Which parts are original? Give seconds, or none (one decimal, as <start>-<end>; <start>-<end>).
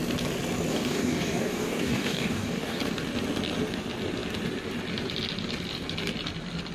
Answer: 0.0-0.7; 2.8-6.7